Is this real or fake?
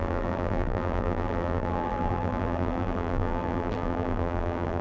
fake